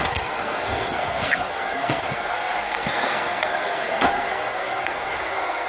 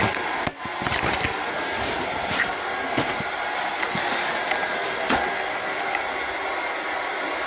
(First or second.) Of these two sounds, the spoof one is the first